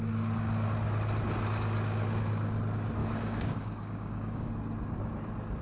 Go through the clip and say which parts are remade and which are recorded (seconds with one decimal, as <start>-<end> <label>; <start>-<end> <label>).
0.0-3.0 recorded; 3.0-4.5 remade; 4.5-5.6 recorded